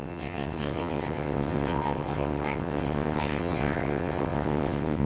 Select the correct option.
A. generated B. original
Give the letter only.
A